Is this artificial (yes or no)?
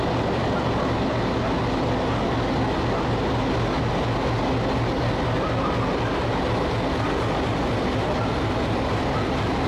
no